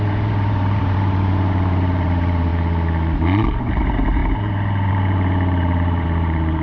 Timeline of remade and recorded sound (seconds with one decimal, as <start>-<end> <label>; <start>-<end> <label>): 0.0-2.5 remade; 2.5-3.6 recorded; 3.6-6.6 remade